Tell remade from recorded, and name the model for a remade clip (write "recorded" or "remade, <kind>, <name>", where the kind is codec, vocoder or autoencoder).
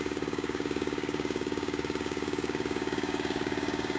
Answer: remade, codec, DAC